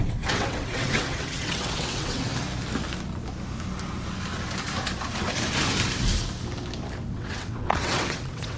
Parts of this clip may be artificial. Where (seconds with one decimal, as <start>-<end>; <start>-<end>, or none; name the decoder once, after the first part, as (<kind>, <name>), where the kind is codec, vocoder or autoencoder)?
0.0-2.3 (vocoder, WaveNeXt); 7.1-8.6